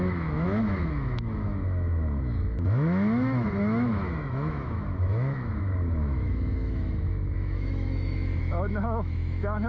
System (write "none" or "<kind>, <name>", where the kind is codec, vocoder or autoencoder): autoencoder, DAC-VAE